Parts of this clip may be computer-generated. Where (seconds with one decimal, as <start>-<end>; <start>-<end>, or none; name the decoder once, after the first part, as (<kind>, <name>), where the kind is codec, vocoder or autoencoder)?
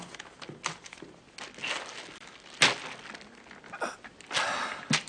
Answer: none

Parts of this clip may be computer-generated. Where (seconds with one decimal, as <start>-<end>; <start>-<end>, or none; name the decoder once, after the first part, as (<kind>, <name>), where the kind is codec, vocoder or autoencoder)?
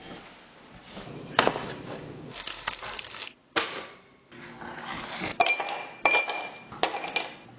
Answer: 0.8-1.9 (vocoder, BigVGAN v2); 5.3-6.8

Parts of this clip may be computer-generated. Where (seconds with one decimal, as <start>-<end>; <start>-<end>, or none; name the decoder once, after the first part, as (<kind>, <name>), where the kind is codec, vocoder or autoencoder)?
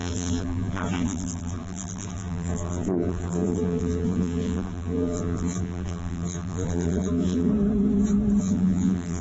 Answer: 0.0-7.5 (vocoder, BigVGAN v2); 8.4-9.2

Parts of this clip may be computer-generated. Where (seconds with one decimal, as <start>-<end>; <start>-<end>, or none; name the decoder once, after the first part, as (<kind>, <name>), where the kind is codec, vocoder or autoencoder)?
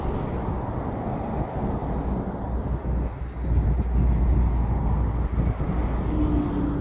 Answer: none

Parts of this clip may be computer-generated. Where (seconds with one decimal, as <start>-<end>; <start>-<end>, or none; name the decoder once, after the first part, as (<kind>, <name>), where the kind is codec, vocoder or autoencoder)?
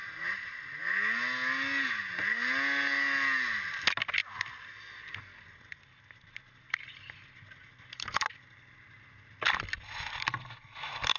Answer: none